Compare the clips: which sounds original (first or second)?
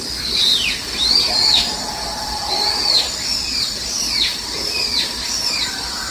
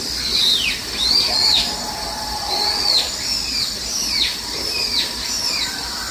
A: second